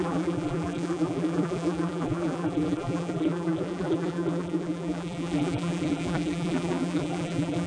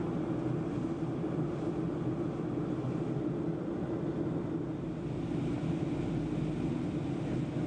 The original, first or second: second